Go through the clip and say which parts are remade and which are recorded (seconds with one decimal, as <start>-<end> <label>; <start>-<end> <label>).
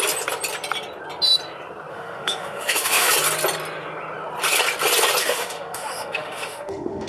0.0-1.9 recorded; 1.9-3.1 remade; 3.1-5.2 recorded; 5.2-7.1 remade